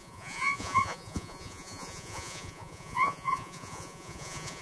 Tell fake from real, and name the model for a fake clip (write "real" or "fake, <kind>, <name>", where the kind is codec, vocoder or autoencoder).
fake, vocoder, Vocos